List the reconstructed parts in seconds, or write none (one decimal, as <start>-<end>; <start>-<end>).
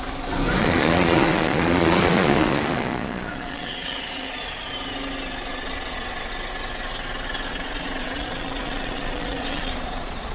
0.6-4.7; 5.5-6.3; 7.5-10.3